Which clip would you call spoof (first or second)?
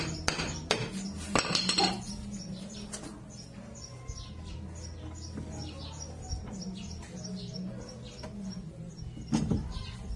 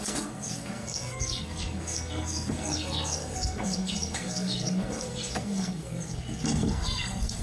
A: second